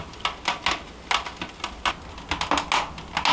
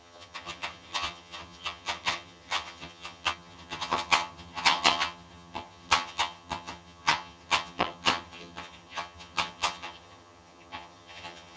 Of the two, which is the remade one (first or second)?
second